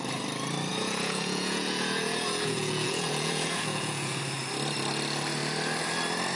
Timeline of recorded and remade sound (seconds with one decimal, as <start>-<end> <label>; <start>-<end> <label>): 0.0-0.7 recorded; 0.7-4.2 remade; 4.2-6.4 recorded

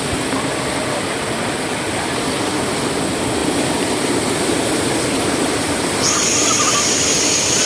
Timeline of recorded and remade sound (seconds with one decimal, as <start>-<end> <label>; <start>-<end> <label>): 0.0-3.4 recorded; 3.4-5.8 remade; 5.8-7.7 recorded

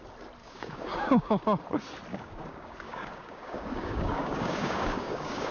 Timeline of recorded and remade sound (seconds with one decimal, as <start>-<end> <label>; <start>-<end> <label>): 0.0-0.4 recorded; 0.4-1.4 remade; 1.4-2.1 recorded; 2.1-5.5 remade

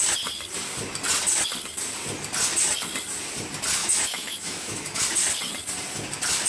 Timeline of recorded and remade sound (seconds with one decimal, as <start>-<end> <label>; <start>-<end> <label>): 0.0-3.8 recorded; 3.8-5.0 remade; 5.0-6.5 recorded

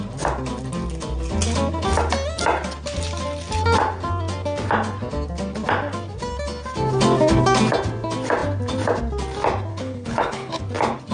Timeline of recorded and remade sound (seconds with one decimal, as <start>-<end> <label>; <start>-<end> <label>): 0.0-9.7 recorded; 9.7-10.6 remade; 10.6-11.1 recorded

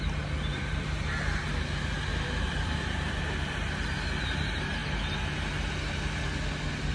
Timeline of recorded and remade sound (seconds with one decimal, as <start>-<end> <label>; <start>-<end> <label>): 0.0-0.5 recorded; 0.5-1.5 remade; 1.5-2.1 recorded; 2.1-3.2 remade; 3.2-6.9 recorded

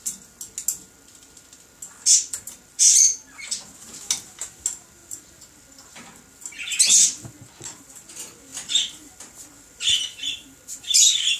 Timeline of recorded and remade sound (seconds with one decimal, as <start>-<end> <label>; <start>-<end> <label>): 0.0-11.4 recorded